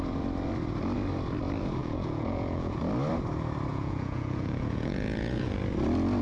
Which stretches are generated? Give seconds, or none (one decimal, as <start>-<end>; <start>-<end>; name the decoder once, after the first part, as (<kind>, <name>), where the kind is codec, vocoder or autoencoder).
1.8-2.8 (vocoder, Vocos); 3.7-5.6